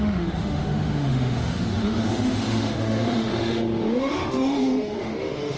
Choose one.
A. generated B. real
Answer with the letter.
A